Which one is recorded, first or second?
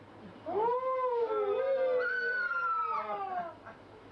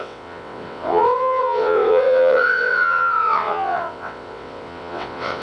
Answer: first